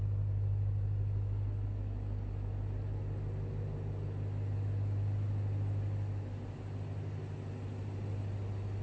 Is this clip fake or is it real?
real